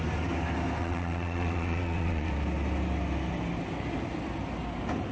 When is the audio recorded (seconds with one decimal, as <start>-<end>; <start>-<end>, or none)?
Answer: 0.0-0.8; 2.3-5.1